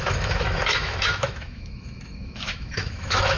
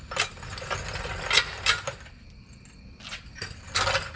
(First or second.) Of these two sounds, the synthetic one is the first